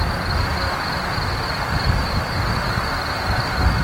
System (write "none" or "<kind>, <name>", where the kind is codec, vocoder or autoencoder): none